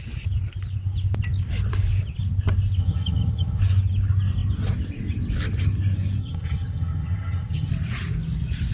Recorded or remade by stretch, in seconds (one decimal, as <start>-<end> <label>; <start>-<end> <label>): 0.0-2.8 recorded; 2.8-3.6 remade; 3.6-6.2 recorded; 6.2-7.7 remade; 7.7-8.7 recorded